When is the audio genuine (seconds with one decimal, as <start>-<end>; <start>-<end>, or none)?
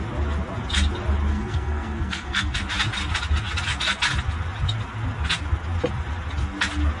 0.0-1.3; 2.6-7.0